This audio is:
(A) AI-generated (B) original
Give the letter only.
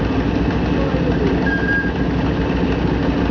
B